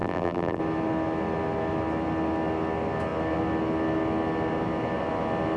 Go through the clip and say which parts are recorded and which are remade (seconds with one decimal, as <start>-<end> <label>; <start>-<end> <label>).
0.0-0.6 remade; 0.6-5.6 recorded

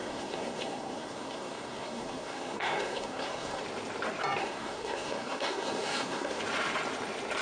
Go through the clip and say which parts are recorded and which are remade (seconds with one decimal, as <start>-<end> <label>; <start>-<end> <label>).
0.0-3.6 remade; 3.6-4.4 recorded; 4.4-6.4 remade; 6.4-7.4 recorded

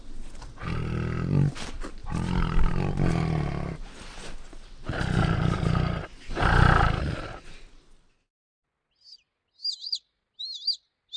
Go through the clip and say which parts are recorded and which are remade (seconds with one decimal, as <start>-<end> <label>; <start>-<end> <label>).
0.0-11.2 recorded

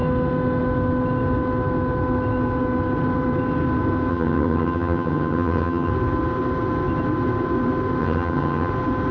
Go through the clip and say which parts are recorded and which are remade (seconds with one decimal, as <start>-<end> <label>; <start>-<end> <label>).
0.0-4.1 recorded; 4.1-5.9 remade; 5.9-8.0 recorded; 8.0-8.7 remade; 8.7-9.1 recorded

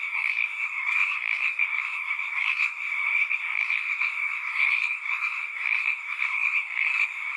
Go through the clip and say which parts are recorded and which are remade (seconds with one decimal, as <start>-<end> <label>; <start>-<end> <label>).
0.0-7.4 remade

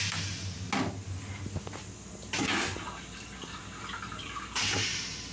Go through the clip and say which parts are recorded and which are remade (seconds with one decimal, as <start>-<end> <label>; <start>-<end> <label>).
0.0-5.3 recorded